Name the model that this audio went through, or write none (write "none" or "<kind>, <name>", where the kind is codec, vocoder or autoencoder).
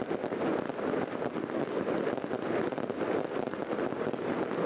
none